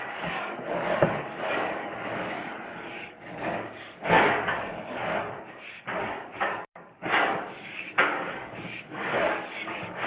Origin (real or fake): fake